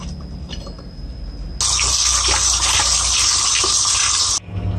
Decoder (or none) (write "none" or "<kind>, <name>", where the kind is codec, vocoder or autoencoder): none